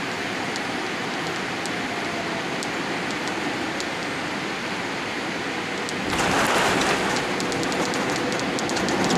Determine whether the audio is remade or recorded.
recorded